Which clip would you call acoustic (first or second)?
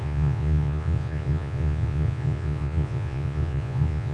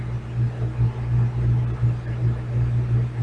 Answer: second